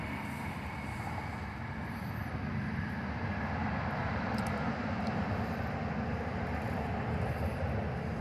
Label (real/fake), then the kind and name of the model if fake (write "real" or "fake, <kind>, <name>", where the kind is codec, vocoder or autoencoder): real